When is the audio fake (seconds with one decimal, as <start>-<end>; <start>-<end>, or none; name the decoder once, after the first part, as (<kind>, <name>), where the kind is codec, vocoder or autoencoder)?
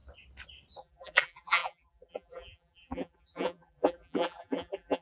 0.8-5.0 (vocoder, BigVGAN v2)